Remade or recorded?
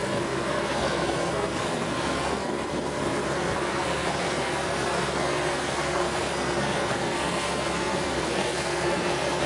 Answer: remade